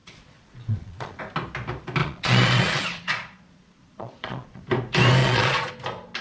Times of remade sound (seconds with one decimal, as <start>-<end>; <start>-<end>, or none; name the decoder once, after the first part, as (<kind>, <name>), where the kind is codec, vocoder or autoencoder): 0.0-1.2 (vocoder, Vocos); 2.0-4.6; 5.2-5.7